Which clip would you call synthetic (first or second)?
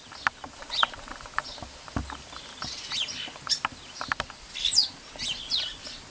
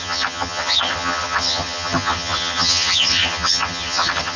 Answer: second